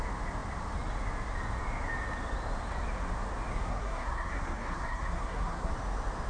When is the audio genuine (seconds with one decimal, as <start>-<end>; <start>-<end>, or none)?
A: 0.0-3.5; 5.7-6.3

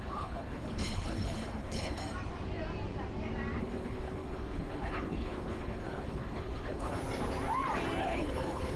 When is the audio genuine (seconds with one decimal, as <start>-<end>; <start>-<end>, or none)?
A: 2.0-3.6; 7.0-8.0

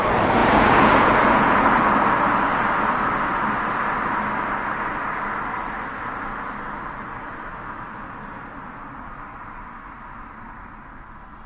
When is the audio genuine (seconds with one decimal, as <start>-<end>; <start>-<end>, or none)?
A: 0.0-0.4; 1.7-11.5

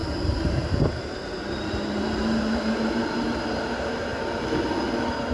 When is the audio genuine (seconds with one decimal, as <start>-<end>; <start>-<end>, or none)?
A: 0.0-0.5; 4.1-5.3

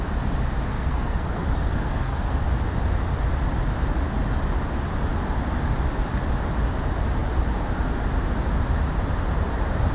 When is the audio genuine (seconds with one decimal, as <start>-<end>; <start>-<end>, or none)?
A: 0.0-0.7; 2.4-9.9

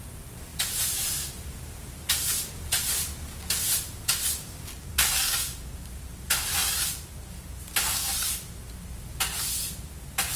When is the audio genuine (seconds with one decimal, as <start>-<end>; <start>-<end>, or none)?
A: 0.0-10.4